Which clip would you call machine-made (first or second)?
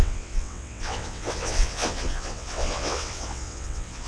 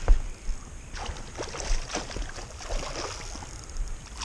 first